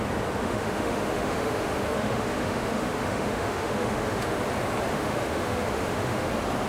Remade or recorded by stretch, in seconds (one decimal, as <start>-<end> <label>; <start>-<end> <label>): 0.0-0.4 recorded; 0.4-4.4 remade; 4.4-4.9 recorded; 4.9-6.3 remade; 6.3-6.7 recorded